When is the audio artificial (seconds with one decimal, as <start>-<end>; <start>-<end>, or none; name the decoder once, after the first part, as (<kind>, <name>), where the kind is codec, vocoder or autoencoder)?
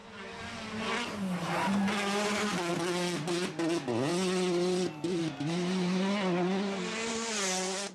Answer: none